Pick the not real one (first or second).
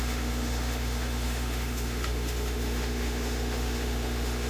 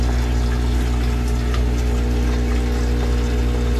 first